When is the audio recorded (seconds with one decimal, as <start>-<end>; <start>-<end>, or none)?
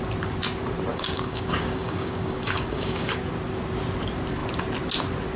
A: 0.0-0.9; 3.2-5.4